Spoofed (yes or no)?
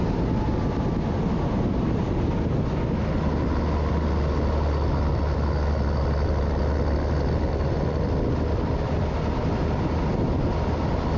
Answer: no